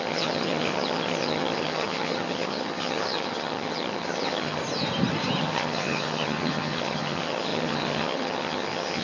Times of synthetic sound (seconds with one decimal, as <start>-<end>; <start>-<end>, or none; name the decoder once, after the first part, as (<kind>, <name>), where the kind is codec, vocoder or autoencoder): 0.0-4.6 (vocoder, HiFi-GAN); 5.4-9.0